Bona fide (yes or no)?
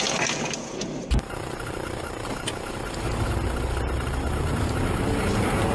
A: yes